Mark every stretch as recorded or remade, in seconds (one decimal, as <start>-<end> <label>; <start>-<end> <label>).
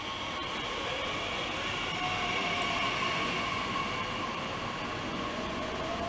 0.0-3.1 recorded; 3.1-3.7 remade; 3.7-5.1 recorded; 5.1-6.1 remade